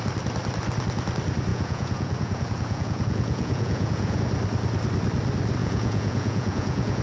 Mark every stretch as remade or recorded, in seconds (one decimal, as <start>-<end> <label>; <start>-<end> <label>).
0.0-1.5 recorded; 1.5-4.2 remade; 4.2-5.6 recorded; 5.6-7.0 remade